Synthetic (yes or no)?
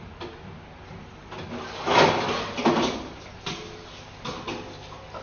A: no